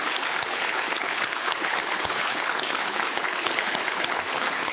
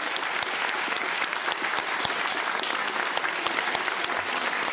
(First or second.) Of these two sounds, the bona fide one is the second